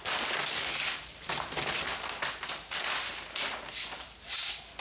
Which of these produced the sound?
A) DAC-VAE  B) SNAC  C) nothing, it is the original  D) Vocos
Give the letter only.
C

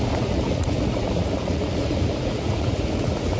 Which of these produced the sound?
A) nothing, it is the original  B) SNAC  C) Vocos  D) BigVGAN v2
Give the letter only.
C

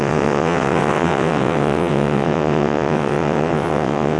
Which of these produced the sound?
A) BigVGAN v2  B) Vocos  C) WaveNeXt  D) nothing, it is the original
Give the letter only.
C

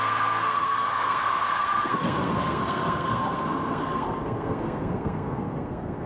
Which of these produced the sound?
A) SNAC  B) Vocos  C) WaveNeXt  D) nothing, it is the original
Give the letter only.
A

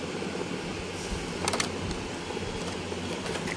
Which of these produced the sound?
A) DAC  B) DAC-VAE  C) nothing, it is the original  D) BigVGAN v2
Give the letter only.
C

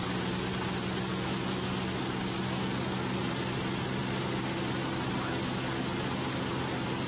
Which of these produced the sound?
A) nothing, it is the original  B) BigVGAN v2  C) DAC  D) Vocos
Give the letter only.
A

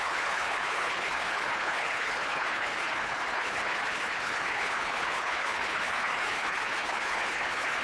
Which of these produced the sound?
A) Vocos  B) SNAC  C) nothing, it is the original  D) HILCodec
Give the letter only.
D